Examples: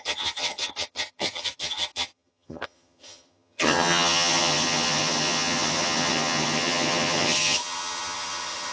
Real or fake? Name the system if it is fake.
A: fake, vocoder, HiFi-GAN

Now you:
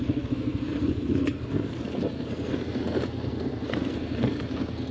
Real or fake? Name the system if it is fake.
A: fake, codec, SNAC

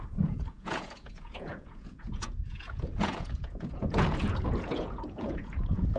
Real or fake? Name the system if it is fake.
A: fake, vocoder, Vocos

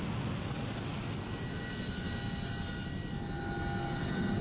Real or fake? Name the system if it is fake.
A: real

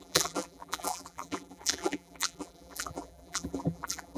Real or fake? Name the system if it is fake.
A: fake, vocoder, BigVGAN v2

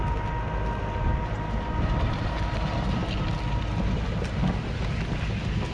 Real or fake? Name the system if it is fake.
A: real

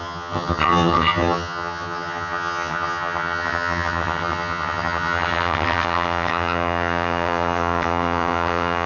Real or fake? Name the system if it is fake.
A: fake, vocoder, HiFi-GAN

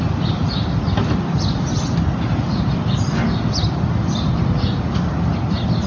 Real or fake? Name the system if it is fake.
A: real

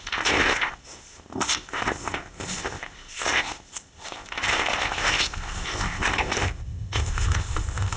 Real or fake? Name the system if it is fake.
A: fake, codec, ZipCodec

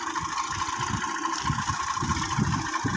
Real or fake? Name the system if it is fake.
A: real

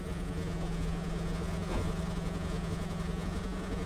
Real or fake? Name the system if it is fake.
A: fake, vocoder, Vocos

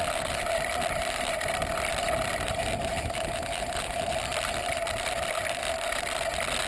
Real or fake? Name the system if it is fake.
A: real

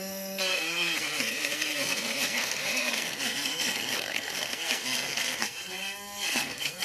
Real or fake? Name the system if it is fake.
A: fake, codec, SNAC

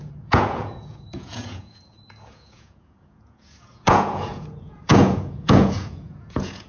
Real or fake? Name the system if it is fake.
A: fake, vocoder, Vocos